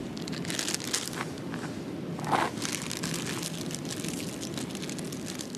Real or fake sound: real